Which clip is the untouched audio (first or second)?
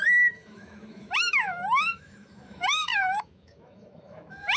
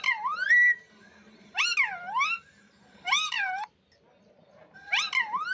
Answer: second